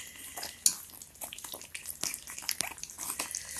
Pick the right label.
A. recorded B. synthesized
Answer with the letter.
A